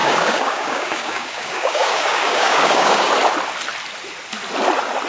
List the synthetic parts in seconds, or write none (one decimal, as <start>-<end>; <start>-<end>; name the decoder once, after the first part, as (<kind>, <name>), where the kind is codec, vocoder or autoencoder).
0.0-3.1 (codec, DAC)